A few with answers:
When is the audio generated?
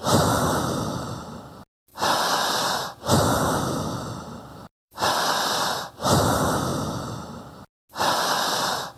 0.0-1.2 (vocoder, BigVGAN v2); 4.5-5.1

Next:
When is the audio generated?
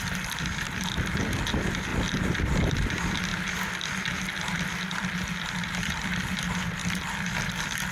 0.0-3.3 (vocoder, BigVGAN v2); 5.5-6.8; 7.4-7.9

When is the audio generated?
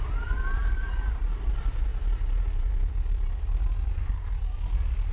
0.0-1.9 (vocoder, BigVGAN v2)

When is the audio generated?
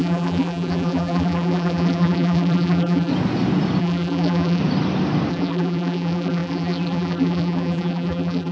0.0-3.1 (vocoder, BigVGAN v2); 3.8-4.6; 5.3-8.5